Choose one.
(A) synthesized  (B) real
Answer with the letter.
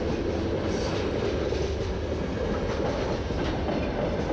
B